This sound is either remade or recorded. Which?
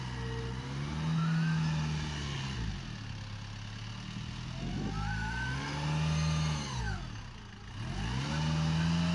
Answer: recorded